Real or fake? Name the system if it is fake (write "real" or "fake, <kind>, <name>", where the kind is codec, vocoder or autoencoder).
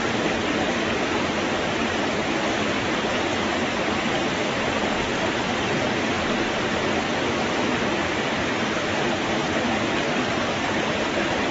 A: real